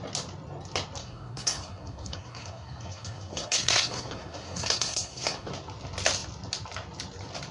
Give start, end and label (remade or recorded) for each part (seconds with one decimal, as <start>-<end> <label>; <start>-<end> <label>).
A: 0.0-1.0 recorded; 1.0-5.5 remade; 5.5-7.5 recorded